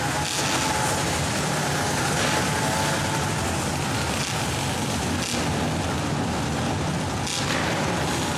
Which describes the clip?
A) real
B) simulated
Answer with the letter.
A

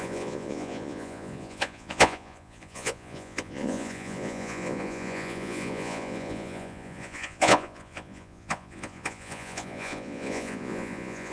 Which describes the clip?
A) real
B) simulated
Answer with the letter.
B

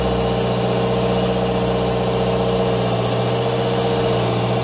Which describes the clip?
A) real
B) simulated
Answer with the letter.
A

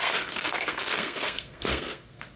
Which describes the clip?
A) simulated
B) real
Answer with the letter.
A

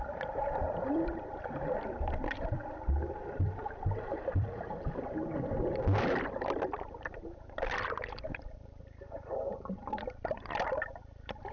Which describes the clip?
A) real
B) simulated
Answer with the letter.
B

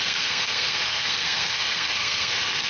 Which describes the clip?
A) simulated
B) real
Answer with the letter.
A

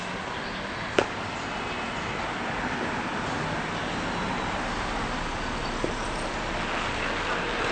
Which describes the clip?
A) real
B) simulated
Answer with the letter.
A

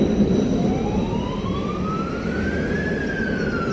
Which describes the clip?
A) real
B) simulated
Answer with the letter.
A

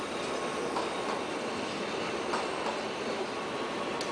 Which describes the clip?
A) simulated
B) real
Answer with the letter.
B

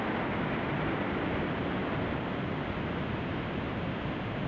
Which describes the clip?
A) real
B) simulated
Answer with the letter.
A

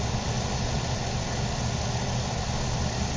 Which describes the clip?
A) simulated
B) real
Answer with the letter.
B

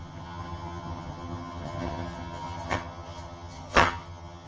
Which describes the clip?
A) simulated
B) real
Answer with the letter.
A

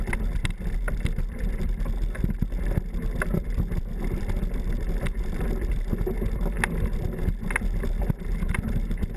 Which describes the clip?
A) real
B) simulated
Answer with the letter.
A